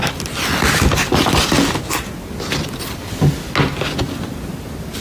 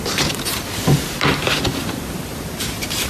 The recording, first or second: first